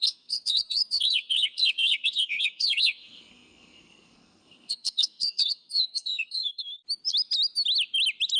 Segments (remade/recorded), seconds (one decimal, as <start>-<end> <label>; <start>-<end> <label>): 0.0-6.8 remade; 6.8-8.4 recorded